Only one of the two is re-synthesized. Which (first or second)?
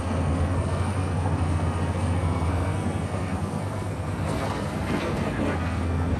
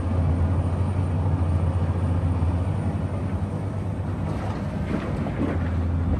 first